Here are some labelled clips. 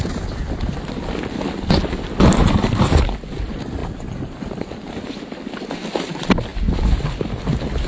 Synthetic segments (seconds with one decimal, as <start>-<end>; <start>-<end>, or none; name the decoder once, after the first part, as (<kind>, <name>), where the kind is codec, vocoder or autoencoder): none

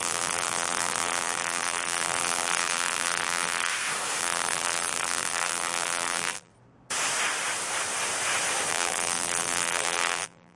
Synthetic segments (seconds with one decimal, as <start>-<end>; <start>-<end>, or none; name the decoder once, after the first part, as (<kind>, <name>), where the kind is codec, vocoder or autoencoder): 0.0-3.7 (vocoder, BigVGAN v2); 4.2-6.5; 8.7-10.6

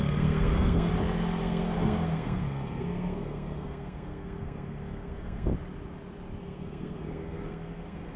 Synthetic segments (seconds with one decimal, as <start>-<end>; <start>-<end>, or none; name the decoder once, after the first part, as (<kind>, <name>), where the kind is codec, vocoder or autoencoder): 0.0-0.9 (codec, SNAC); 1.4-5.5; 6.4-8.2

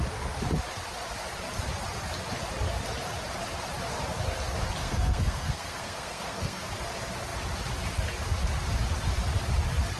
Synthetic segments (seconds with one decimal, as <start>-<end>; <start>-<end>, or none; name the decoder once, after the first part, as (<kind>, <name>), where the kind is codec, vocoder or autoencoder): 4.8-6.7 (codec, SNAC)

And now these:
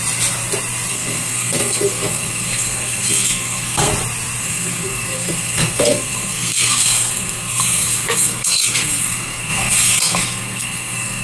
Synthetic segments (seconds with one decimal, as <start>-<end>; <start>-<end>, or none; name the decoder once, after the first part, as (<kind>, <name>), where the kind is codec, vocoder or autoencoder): 0.9-3.9 (codec, SNAC); 4.4-11.2

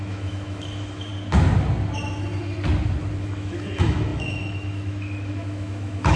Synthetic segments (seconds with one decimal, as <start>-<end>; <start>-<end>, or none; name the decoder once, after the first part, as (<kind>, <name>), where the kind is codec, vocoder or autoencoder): 0.0-1.1 (autoencoder, DAC-VAE); 3.2-6.2

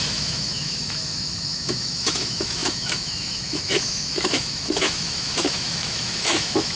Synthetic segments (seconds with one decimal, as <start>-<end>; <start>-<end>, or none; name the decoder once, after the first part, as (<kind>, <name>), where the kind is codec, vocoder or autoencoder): 0.0-6.8 (autoencoder, DAC-VAE)